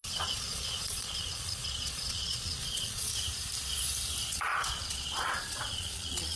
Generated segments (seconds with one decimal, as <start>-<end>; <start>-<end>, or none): 0.0-3.1; 4.3-6.4